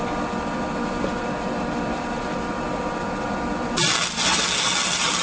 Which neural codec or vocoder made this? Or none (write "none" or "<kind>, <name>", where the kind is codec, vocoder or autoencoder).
none